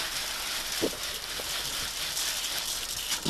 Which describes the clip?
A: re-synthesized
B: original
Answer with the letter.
B